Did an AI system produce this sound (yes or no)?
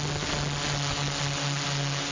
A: no